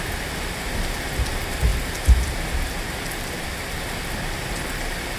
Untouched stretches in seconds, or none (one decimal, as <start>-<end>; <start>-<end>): 0.0-5.2